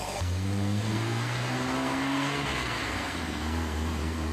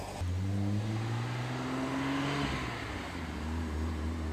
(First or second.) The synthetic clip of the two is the first